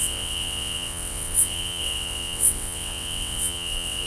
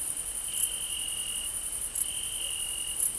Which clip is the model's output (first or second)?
first